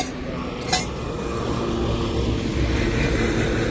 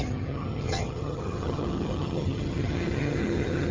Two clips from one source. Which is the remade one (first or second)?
second